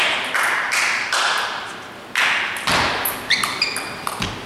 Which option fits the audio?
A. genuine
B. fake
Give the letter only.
A